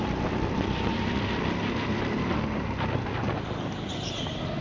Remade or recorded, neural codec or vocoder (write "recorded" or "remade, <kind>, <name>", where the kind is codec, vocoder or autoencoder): recorded